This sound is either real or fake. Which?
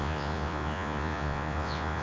fake